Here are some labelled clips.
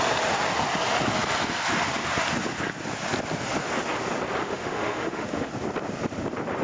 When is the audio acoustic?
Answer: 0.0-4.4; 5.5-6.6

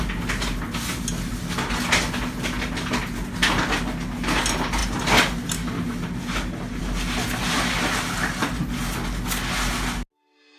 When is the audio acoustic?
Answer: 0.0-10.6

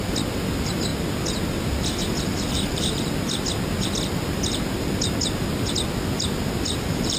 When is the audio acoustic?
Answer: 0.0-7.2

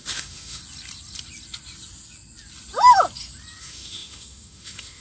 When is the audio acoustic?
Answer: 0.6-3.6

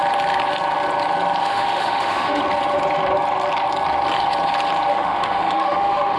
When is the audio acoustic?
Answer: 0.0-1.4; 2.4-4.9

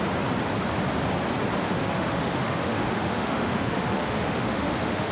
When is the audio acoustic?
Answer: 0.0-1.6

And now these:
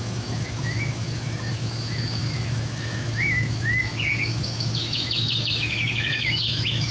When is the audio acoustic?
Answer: none

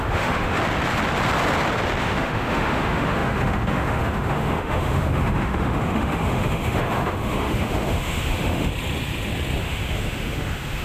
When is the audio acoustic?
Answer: 0.6-2.0; 8.7-9.6